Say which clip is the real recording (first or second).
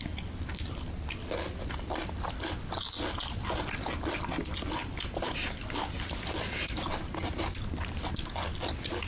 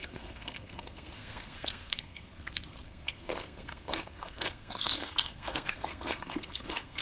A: first